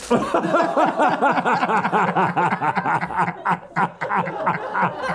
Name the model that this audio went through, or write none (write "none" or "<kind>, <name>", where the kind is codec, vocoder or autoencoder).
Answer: none